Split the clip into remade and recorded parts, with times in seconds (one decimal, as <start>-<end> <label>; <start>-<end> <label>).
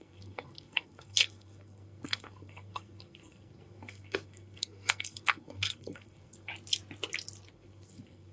0.0-6.5 remade; 6.5-7.5 recorded; 7.5-8.3 remade